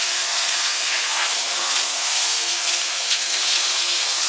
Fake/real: fake